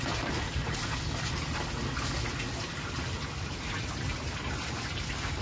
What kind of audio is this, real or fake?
real